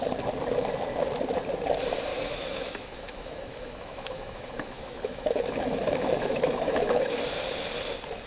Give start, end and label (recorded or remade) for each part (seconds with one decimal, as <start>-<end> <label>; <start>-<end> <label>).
0.0-2.1 recorded; 2.1-7.1 remade; 7.1-8.3 recorded